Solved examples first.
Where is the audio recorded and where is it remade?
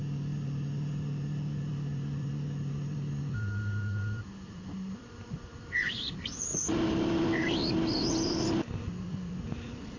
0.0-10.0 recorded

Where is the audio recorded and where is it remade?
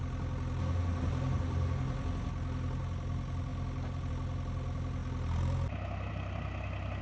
0.0-7.0 recorded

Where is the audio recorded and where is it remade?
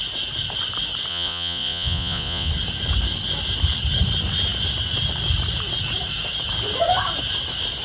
0.0-1.1 recorded; 1.1-2.5 remade; 2.5-7.8 recorded